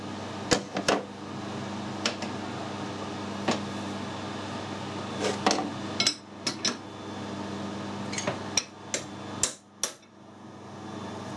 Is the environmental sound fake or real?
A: real